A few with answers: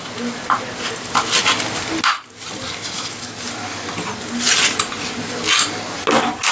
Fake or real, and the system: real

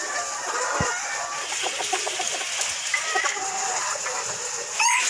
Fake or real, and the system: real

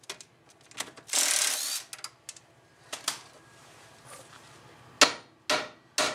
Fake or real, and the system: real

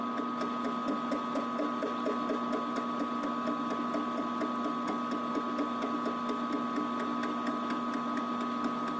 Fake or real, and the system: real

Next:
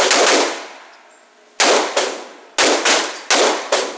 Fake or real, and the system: real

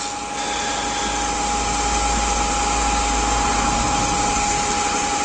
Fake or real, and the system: real